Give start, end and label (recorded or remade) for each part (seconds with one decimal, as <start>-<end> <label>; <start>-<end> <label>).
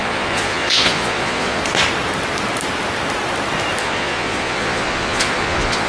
0.0-1.6 remade; 1.6-3.8 recorded; 3.8-5.9 remade